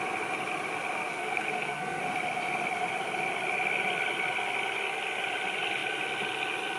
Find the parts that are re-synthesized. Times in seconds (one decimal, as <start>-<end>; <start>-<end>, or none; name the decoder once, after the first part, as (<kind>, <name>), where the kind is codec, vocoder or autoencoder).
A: 1.1-2.0 (codec, SNAC)